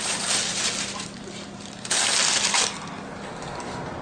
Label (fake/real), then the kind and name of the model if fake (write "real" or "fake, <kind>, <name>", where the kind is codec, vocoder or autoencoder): real